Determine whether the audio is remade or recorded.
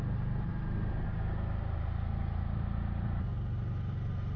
recorded